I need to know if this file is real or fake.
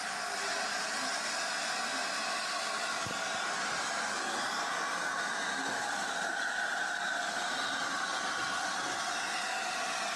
real